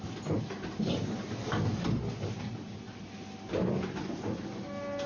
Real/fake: real